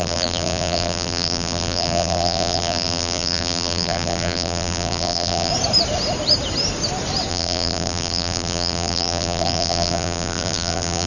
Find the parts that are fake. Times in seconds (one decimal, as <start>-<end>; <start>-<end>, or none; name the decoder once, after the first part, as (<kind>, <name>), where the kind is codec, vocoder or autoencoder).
0.0-5.5 (vocoder, BigVGAN v2); 7.3-11.1